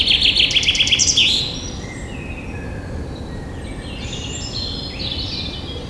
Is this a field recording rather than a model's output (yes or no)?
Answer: yes